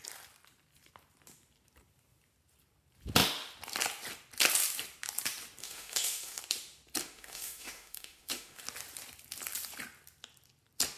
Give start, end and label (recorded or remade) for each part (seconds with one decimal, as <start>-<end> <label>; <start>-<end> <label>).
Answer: 0.0-5.6 recorded; 5.6-6.4 remade; 6.4-7.0 recorded; 7.0-8.6 remade; 8.6-11.0 recorded